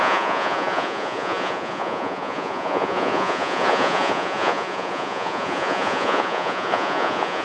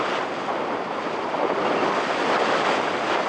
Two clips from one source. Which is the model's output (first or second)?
first